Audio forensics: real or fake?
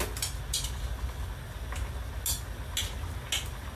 real